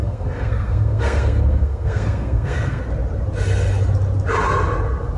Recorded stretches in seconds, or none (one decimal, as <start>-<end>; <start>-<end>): 2.8-5.2